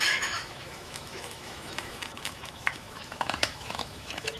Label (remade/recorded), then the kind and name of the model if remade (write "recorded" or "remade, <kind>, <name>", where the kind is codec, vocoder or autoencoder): remade, autoencoder, DAC-VAE